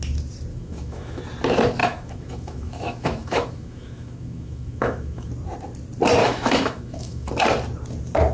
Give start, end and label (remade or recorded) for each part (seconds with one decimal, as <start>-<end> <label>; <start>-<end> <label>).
0.0-0.5 recorded; 0.5-1.2 remade; 1.2-1.8 recorded; 1.8-5.3 remade; 5.3-6.2 recorded; 6.2-7.3 remade; 7.3-8.3 recorded